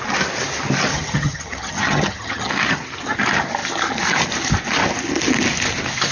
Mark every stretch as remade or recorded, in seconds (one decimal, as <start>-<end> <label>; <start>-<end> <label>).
0.0-0.9 recorded; 0.9-2.5 remade; 2.5-6.1 recorded

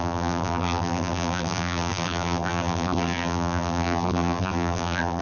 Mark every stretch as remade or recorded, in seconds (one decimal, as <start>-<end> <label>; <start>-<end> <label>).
0.0-5.2 remade

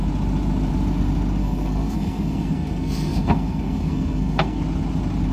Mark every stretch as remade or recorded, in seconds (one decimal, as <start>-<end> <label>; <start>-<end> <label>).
0.0-1.4 recorded; 1.4-4.6 remade; 4.6-5.3 recorded